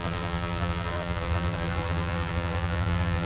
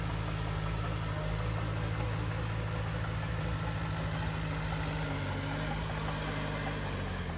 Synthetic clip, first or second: first